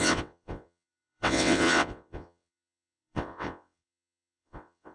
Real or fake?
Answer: fake